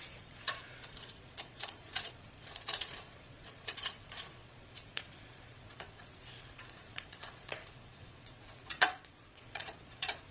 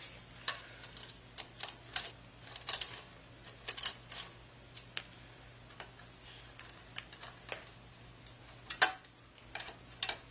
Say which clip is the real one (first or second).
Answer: second